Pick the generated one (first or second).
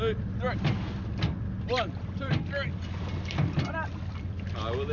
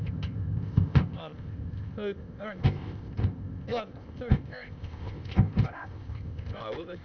second